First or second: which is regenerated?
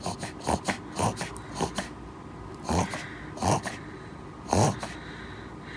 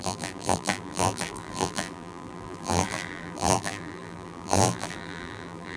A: second